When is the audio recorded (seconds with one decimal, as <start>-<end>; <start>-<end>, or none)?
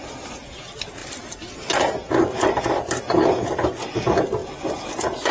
0.0-5.3